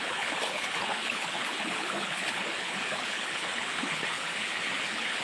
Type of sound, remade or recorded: remade